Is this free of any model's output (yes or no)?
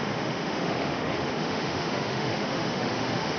no